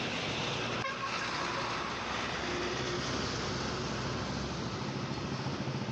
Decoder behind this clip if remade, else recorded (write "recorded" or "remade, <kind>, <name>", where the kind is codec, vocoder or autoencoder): recorded